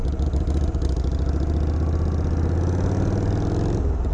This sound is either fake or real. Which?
real